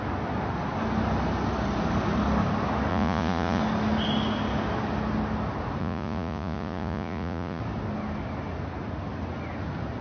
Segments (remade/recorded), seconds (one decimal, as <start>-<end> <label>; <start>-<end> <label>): 0.0-2.9 recorded; 2.9-3.6 remade; 3.6-5.8 recorded; 5.8-7.6 remade; 7.6-10.0 recorded